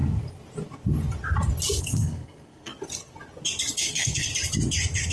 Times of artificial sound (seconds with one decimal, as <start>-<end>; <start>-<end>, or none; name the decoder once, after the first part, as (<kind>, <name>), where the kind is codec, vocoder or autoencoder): 1.8-2.7 (codec, SNAC); 3.8-4.3